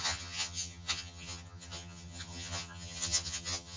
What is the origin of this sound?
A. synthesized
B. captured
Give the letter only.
A